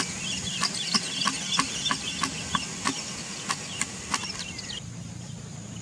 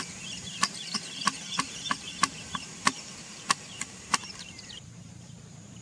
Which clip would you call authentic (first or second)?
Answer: first